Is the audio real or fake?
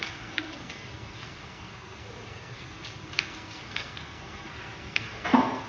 fake